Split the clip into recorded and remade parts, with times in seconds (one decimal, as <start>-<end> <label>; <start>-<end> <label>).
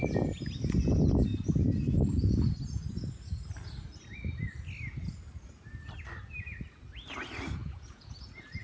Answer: 0.0-7.6 recorded; 7.6-8.6 remade